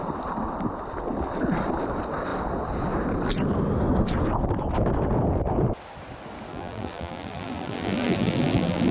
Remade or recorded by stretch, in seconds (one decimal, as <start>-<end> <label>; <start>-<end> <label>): 0.0-6.5 recorded; 6.5-8.9 remade